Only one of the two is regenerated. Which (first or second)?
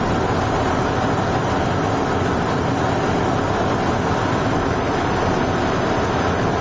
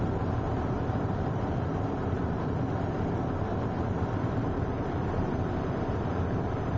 second